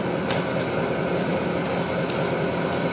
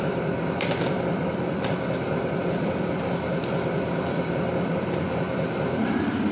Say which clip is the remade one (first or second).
second